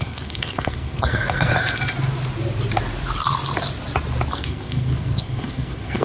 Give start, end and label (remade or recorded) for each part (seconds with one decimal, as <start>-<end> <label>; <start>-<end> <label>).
0.0-1.5 remade; 1.5-4.3 recorded; 4.3-6.0 remade